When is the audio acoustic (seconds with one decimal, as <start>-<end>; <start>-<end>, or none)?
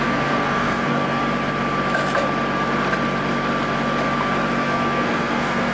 1.2-4.6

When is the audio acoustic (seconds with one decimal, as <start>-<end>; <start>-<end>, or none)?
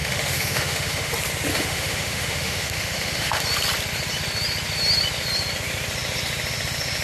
1.1-1.5; 3.4-7.0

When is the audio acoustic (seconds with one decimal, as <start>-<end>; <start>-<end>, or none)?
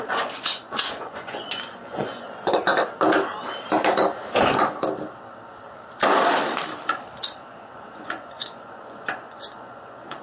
2.7-7.2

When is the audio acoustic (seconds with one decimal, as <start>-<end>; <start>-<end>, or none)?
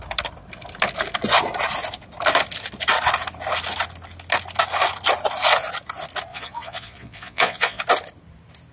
0.0-6.3; 7.8-8.7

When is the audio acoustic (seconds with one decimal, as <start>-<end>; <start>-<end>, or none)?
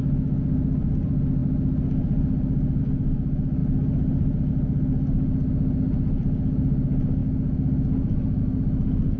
0.0-9.2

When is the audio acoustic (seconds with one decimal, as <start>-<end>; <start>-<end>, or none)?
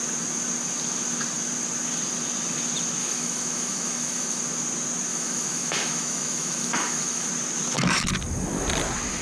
0.0-3.0; 4.4-5.1; 7.3-9.2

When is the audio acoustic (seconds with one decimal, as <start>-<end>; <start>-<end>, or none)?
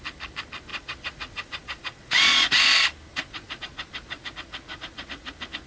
0.0-0.7; 2.6-3.1; 4.2-4.7; 5.3-5.7